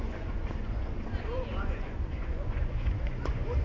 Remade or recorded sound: remade